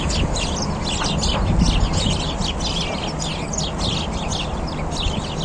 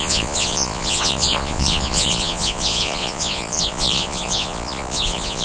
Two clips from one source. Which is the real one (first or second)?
first